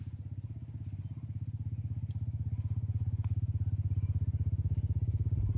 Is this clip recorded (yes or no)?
yes